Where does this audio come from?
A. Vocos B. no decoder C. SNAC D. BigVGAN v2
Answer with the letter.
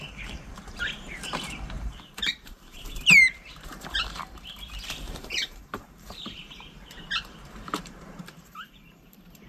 D